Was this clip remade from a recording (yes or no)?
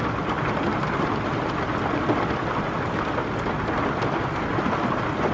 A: no